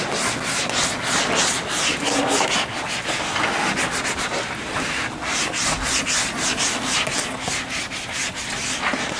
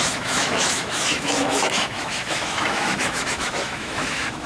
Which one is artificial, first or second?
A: second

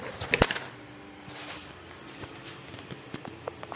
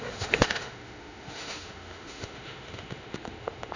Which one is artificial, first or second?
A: second